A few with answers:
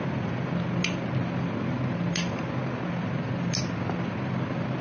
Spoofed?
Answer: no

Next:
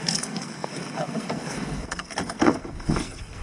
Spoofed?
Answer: yes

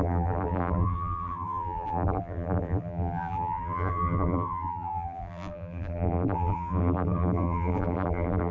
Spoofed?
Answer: yes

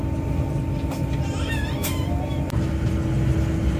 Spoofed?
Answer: no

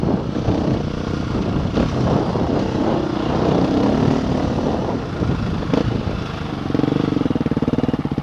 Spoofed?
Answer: no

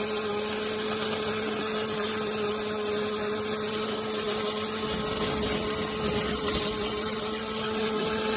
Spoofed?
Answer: no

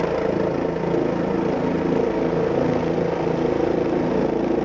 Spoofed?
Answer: no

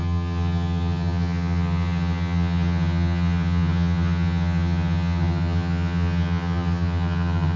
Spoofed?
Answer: yes